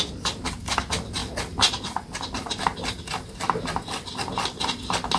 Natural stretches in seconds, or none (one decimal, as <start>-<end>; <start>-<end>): 0.0-5.2